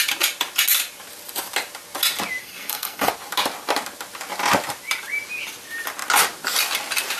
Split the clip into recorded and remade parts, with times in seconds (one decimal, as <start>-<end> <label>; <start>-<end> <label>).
0.0-2.4 recorded; 2.4-3.1 remade; 3.1-7.2 recorded